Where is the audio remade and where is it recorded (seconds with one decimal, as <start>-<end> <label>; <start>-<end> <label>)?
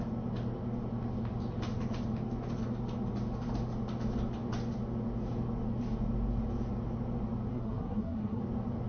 0.0-7.5 recorded; 7.5-8.4 remade; 8.4-8.9 recorded